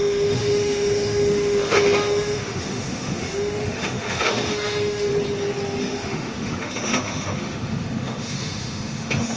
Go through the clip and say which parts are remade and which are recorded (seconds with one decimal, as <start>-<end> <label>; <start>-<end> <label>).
0.0-5.1 remade; 5.1-5.8 recorded; 5.8-9.4 remade

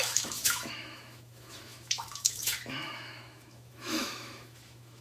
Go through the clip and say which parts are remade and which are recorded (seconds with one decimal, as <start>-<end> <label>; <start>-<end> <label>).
0.0-5.0 remade

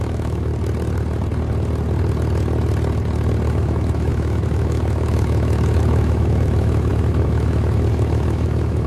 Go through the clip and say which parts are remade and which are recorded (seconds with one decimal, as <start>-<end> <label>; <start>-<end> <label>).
0.0-0.5 remade; 0.5-3.5 recorded; 3.5-8.9 remade

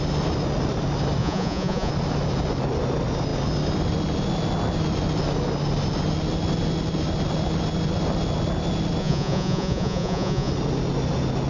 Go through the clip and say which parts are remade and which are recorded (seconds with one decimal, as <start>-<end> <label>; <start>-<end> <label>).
0.0-1.2 recorded; 1.2-1.9 remade; 1.9-9.0 recorded; 9.0-10.5 remade; 10.5-11.5 recorded

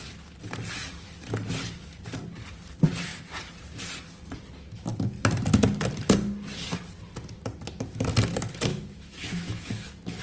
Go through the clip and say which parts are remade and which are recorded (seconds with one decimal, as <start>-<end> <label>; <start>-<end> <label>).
0.0-8.7 recorded; 8.7-10.2 remade

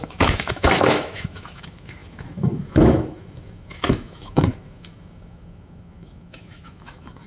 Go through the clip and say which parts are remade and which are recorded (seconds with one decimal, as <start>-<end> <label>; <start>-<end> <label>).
0.0-7.3 remade